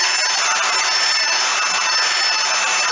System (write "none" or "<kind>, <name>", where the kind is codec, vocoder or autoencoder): none